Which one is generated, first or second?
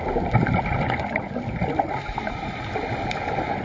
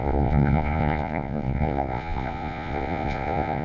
second